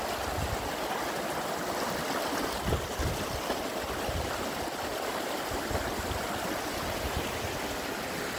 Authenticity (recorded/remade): recorded